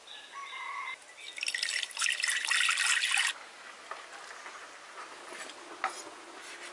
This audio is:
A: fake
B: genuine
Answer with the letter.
B